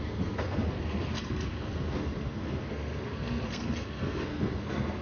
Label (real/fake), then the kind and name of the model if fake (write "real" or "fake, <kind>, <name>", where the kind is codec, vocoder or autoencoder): fake, codec, SNAC